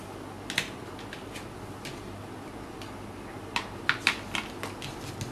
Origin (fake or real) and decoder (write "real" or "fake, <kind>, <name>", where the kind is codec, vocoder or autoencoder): real